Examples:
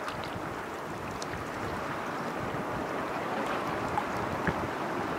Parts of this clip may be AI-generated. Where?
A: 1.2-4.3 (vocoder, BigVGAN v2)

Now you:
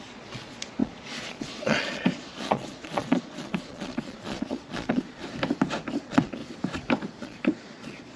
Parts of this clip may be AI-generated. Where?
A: 0.0-5.2 (vocoder, Vocos); 6.0-6.4; 7.2-8.2

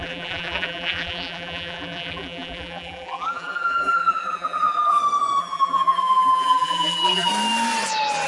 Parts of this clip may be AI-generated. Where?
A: 0.0-5.0 (vocoder, BigVGAN v2); 5.4-7.3

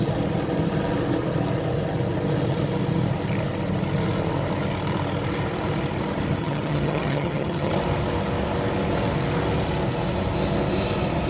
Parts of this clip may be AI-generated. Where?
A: 6.4-7.7 (vocoder, HiFi-GAN)

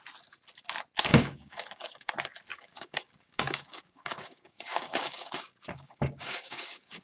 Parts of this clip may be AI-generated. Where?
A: 1.1-2.1 (codec, DAC); 2.5-7.0

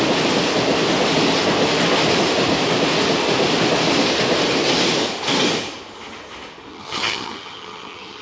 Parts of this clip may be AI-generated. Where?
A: 6.7-8.2 (vocoder, HiFi-GAN)

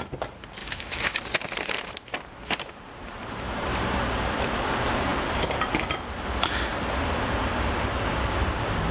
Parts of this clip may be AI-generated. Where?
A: 0.6-1.2 (autoencoder, DAC-VAE)

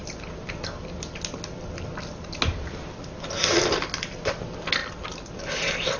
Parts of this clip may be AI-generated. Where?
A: none